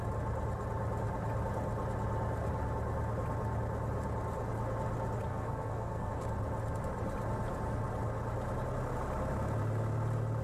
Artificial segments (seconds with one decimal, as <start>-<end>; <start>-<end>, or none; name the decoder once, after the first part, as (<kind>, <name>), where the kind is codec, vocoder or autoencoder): 5.3-6.1 (codec, SNAC)